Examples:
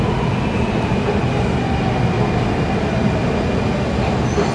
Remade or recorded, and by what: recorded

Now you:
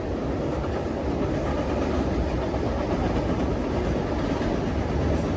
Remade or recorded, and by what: recorded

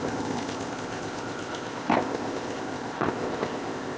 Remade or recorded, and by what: remade, codec, ZipCodec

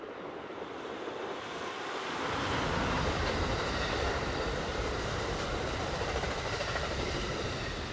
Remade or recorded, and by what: remade, vocoder, BigVGAN v2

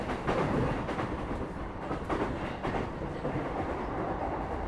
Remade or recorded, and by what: remade, vocoder, BigVGAN v2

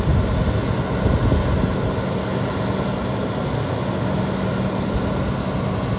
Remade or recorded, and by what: recorded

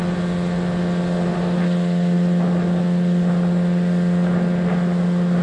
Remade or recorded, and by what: recorded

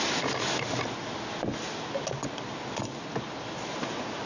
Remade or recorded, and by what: recorded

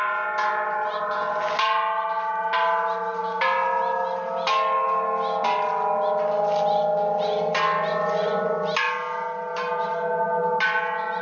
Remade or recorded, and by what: recorded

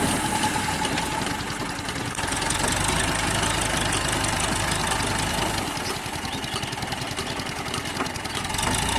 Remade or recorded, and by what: recorded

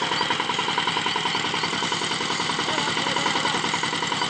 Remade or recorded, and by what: recorded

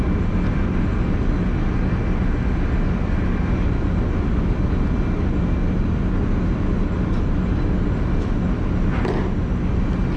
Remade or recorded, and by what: recorded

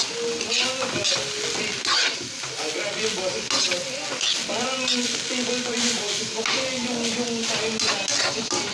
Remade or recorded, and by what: recorded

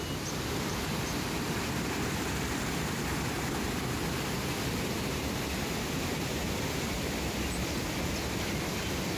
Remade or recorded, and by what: remade, vocoder, BigVGAN v2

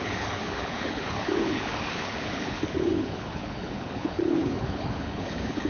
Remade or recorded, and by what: remade, codec, HILCodec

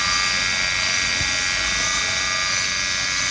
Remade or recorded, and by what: recorded